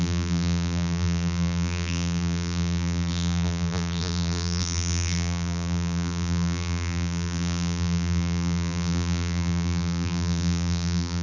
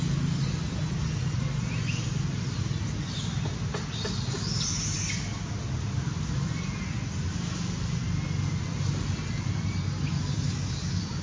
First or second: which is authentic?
second